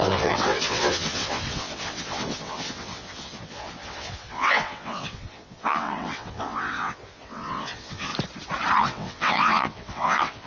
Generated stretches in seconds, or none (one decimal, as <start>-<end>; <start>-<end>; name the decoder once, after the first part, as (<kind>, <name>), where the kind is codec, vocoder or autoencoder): 0.0-8.1 (vocoder, WaveNeXt); 8.8-10.5